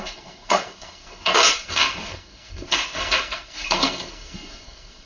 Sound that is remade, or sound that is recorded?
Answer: remade